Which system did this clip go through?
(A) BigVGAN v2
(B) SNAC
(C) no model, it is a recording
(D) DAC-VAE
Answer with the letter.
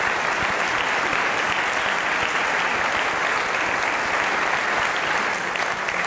C